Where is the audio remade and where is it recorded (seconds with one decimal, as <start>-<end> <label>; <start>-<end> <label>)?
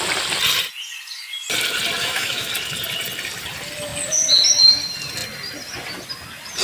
0.0-2.0 recorded; 2.0-2.5 remade; 2.5-6.6 recorded